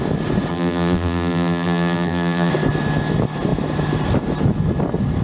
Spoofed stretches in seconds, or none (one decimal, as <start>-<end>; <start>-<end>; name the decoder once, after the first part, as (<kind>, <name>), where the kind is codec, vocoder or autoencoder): 0.5-2.5 (vocoder, BigVGAN v2)